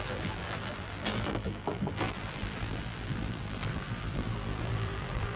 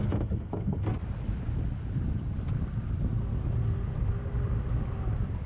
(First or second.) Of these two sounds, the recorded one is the second